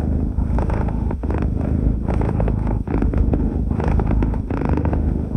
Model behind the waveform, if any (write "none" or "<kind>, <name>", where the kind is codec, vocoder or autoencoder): autoencoder, DAC-VAE